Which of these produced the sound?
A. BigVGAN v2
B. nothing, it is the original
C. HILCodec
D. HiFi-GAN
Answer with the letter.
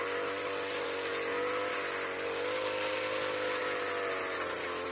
B